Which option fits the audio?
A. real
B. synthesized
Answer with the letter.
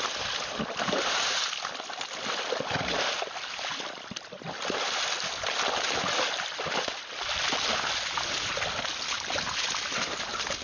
A